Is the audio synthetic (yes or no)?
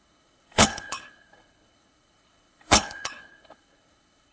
yes